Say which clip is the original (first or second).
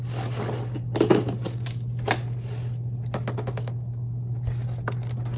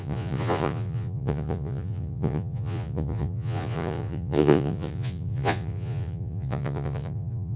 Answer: first